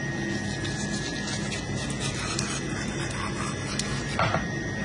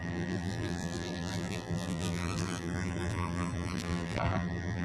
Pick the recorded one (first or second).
first